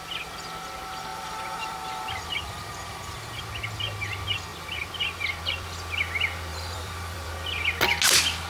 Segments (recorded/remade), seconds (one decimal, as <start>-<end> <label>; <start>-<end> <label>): 0.0-1.1 recorded; 1.1-3.4 remade; 3.4-6.5 recorded; 6.5-7.3 remade; 7.3-8.5 recorded